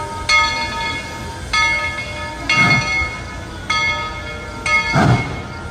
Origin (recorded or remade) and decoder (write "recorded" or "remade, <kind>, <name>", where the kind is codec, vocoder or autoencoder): recorded